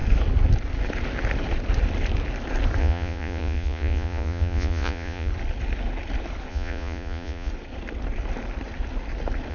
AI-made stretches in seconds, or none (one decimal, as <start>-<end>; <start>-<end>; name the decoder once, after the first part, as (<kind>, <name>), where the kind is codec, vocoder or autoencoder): 2.8-5.3 (vocoder, Vocos); 6.5-7.5